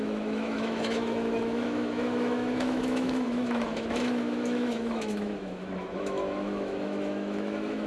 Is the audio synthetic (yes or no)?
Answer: yes